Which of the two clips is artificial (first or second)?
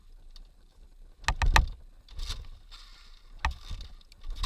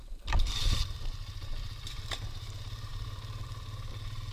second